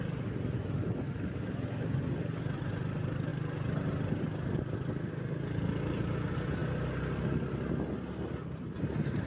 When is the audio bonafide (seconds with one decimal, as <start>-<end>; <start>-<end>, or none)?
0.0-9.3